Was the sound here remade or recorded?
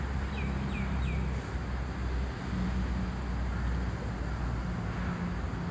recorded